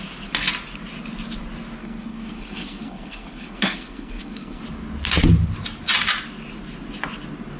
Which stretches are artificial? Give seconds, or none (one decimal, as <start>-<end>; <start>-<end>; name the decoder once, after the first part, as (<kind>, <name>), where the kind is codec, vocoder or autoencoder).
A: 1.8-4.6 (codec, SNAC)